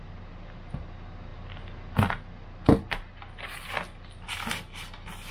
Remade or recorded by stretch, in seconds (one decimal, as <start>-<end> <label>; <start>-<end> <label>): 0.0-5.3 recorded